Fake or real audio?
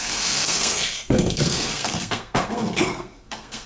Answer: fake